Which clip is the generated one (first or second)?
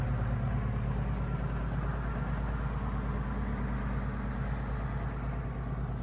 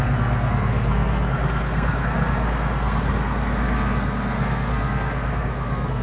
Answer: second